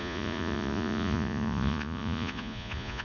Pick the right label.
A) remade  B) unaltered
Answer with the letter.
A